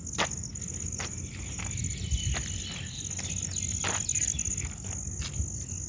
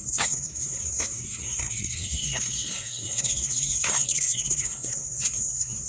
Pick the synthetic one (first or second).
second